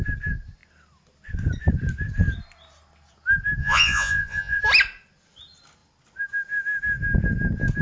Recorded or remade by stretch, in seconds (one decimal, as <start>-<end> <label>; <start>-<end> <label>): 0.0-3.6 recorded; 3.6-4.6 remade; 4.6-7.8 recorded